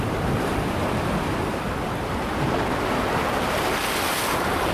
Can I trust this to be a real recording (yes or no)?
yes